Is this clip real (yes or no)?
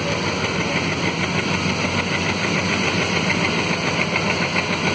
yes